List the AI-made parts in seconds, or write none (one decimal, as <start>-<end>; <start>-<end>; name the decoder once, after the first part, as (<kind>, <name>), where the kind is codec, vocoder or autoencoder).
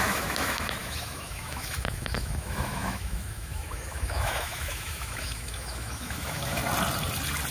0.0-6.6 (autoencoder, DAC-VAE)